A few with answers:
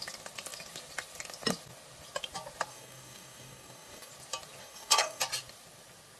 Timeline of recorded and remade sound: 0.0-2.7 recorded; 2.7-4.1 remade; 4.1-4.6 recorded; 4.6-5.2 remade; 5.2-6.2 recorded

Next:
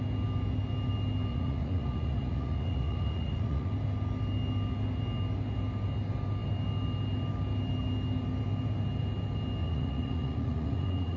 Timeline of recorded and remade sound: 0.0-1.3 recorded; 1.3-3.7 remade; 3.7-9.6 recorded; 9.6-11.2 remade

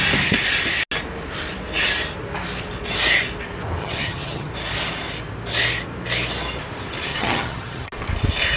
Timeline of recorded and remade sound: 0.0-3.8 recorded; 3.8-4.5 remade; 4.5-7.1 recorded; 7.1-7.9 remade; 7.9-8.6 recorded